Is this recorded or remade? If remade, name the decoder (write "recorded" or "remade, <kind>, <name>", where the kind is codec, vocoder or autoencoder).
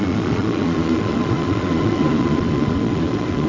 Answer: remade, vocoder, Vocos